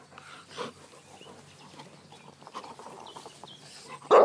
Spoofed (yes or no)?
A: no